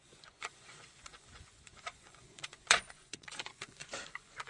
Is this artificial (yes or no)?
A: yes